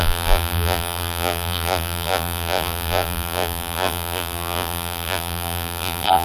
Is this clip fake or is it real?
fake